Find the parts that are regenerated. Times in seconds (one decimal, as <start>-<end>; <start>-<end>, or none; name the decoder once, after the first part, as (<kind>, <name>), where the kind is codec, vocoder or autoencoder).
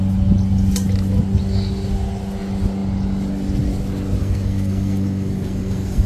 4.2-6.1 (codec, SNAC)